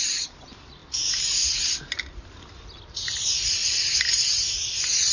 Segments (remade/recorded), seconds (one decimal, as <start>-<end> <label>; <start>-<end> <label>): 0.0-5.1 recorded